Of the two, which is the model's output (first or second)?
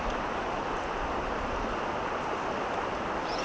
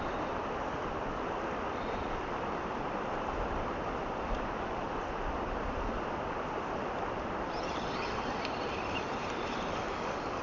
second